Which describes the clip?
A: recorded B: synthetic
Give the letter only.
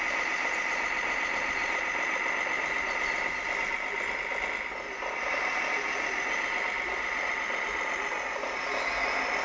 A